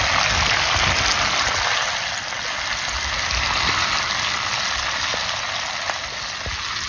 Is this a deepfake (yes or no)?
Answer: no